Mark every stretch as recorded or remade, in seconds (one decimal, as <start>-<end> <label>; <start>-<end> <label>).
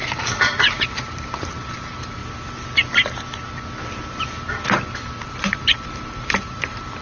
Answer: 0.0-2.2 remade; 2.2-4.8 recorded; 4.8-7.0 remade